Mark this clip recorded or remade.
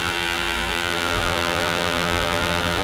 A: remade